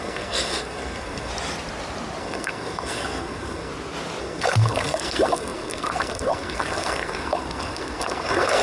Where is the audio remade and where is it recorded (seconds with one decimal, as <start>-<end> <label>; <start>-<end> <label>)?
0.0-1.3 remade; 1.3-2.2 recorded; 2.2-3.7 remade; 3.7-4.2 recorded; 4.2-8.6 remade